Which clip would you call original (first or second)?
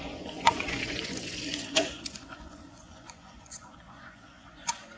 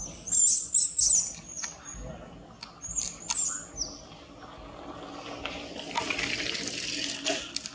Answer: second